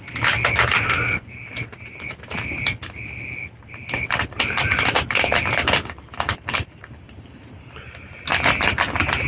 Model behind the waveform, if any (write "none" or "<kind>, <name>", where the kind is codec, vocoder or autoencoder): none